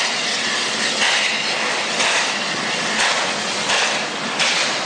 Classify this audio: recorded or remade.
recorded